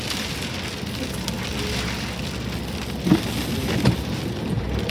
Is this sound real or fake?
real